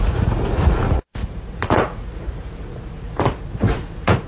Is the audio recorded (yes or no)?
no